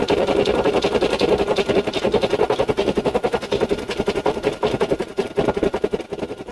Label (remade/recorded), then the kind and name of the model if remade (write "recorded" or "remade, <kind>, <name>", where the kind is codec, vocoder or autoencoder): recorded